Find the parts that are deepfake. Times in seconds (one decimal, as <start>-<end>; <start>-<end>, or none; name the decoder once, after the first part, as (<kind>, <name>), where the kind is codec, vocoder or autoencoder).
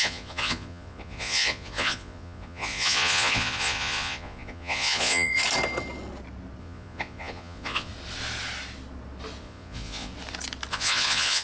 0.0-5.4 (vocoder, Vocos); 6.6-7.9; 9.4-10.1; 10.7-11.4